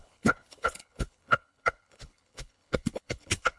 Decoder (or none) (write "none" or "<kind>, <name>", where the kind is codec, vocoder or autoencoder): codec, HILCodec